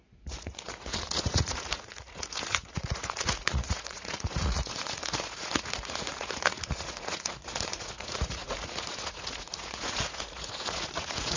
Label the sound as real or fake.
fake